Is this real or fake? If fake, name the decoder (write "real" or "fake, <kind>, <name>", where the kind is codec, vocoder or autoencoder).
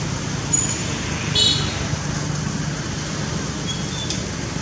real